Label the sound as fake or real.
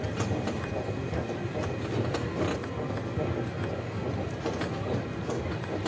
real